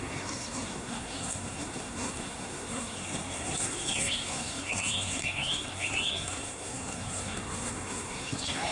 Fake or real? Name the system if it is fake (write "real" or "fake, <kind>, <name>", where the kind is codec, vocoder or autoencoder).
fake, codec, SNAC